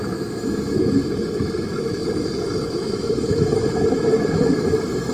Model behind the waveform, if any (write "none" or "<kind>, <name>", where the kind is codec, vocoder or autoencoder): autoencoder, DAC-VAE